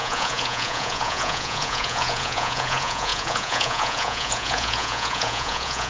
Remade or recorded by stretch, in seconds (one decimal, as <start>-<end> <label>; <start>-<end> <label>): 0.0-5.9 remade